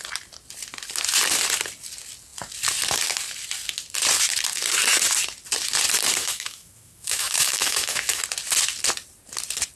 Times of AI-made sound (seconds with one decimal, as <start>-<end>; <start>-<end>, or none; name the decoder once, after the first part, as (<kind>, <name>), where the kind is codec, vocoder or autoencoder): 6.2-8.2 (autoencoder, DAC-VAE)